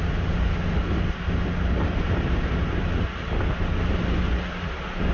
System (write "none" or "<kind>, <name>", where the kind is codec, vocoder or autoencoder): none